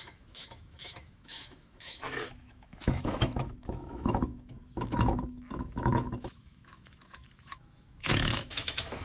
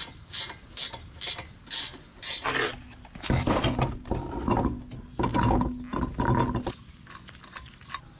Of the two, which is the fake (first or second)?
first